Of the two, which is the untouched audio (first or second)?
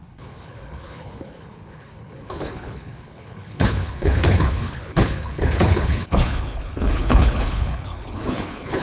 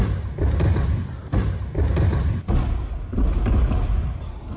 second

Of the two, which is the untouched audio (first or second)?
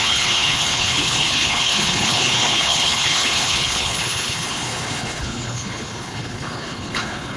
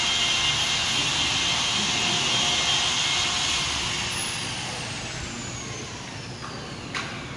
second